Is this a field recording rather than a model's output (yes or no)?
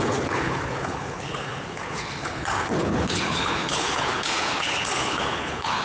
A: no